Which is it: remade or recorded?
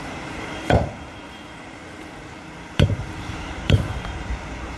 remade